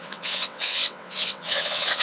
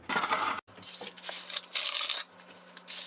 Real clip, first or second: second